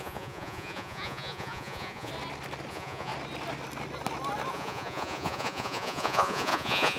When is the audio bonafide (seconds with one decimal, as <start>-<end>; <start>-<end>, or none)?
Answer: 2.1-2.7; 3.1-4.5